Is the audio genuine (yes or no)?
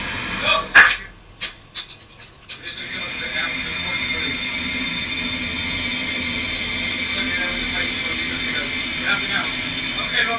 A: yes